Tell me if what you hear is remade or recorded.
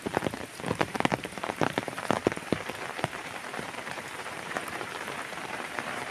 remade